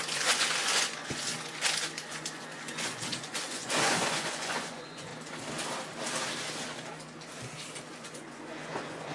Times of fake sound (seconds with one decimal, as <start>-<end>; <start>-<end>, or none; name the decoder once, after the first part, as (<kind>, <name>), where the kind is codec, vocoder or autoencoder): 0.0-5.1 (vocoder, Vocos); 7.9-9.1